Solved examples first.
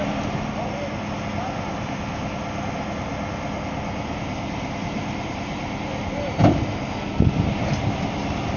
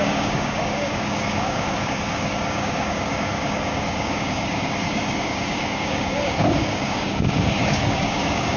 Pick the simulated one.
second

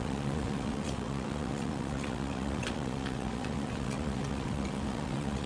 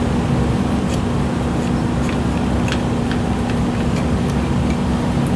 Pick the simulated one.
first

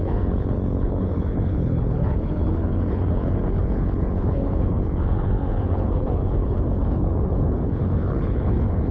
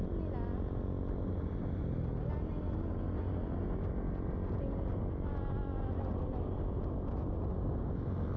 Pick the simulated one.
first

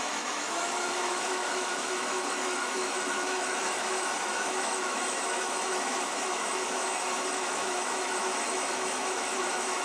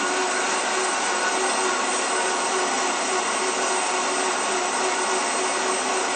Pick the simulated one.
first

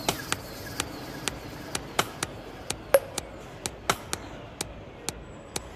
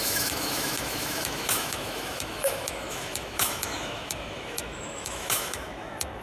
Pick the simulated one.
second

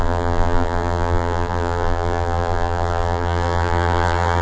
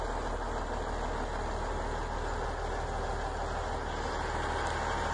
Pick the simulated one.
first